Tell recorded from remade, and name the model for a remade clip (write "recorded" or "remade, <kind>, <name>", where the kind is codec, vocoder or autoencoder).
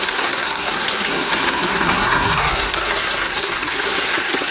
remade, codec, SNAC